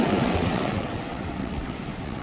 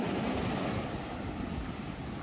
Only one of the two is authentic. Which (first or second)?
second